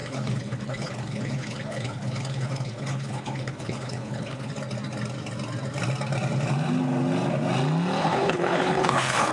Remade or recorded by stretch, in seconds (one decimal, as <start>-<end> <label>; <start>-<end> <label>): 0.0-4.5 remade; 4.5-8.0 recorded; 8.0-9.3 remade